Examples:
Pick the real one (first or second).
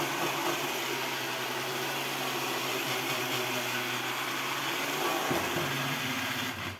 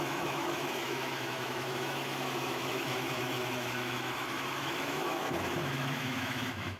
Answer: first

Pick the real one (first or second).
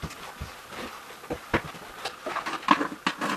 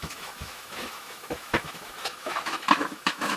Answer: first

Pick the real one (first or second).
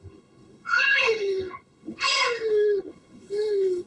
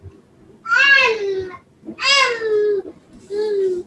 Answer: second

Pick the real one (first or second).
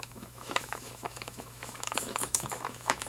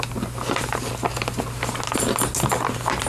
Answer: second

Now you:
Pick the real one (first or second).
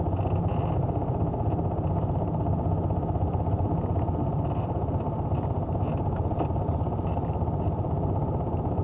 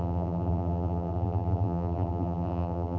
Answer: first